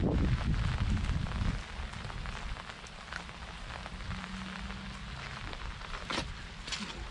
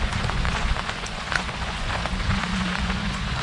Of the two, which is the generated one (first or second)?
second